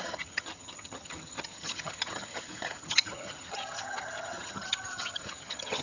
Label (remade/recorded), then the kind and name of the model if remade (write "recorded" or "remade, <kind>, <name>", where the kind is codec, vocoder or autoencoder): remade, vocoder, HiFi-GAN